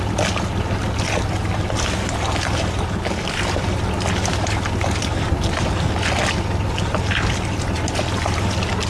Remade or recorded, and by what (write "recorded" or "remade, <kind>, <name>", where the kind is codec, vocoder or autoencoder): recorded